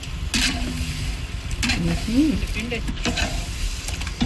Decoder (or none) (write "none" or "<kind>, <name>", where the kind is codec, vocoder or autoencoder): none